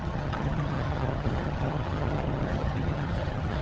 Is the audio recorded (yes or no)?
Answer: no